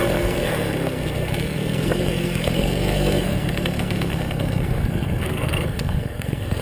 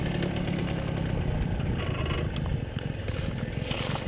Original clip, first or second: second